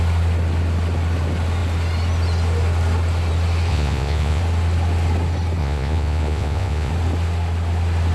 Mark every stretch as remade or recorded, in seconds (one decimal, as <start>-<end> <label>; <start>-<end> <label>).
0.0-3.7 recorded; 3.7-4.4 remade; 4.4-5.6 recorded; 5.6-6.9 remade; 6.9-8.1 recorded